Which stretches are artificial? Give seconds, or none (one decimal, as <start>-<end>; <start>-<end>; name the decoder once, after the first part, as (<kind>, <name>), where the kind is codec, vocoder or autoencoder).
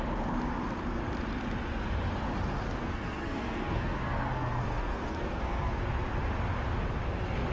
2.8-5.8 (codec, SNAC)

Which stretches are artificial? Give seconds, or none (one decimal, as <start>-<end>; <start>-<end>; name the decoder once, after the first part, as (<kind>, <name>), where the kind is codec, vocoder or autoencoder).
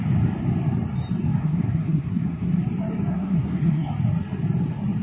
1.4-2.6 (codec, SNAC); 3.1-3.9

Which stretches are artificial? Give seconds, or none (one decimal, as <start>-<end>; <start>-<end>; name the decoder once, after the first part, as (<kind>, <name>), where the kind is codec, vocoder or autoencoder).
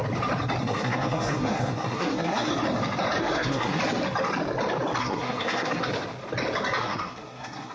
0.6-2.5 (codec, SNAC); 3.2-3.8; 5.0-5.9; 6.8-7.7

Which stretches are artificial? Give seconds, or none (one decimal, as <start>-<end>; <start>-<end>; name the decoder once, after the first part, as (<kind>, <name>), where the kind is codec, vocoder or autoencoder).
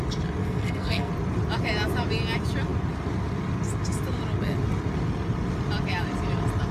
0.4-1.1 (codec, SNAC)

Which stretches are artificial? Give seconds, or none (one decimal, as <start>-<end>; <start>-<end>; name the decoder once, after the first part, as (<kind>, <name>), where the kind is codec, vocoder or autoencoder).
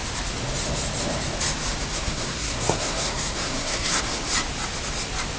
1.9-4.0 (codec, SNAC)